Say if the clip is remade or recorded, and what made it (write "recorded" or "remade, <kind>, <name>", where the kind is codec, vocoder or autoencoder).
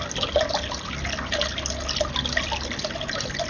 recorded